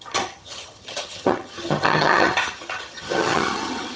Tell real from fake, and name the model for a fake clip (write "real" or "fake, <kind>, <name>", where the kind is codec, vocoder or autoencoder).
fake, vocoder, HiFi-GAN